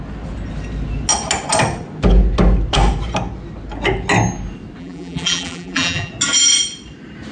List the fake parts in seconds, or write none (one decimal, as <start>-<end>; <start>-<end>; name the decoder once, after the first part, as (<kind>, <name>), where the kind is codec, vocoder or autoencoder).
4.8-6.1 (vocoder, BigVGAN v2)